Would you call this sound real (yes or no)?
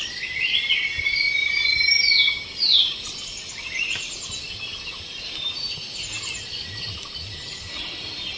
yes